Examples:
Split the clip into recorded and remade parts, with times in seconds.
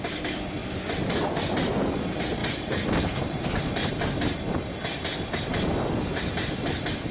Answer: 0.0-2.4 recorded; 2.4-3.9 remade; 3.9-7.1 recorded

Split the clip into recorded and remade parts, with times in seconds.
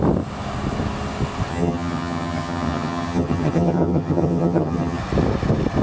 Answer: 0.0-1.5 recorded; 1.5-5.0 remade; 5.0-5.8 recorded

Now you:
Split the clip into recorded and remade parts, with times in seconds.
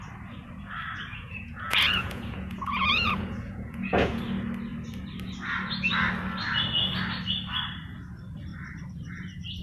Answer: 0.0-1.1 recorded; 1.1-4.2 remade; 4.2-9.6 recorded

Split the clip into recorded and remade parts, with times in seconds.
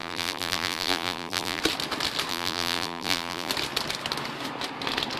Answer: 0.0-1.6 remade; 1.6-2.3 recorded; 2.3-3.5 remade; 3.5-5.2 recorded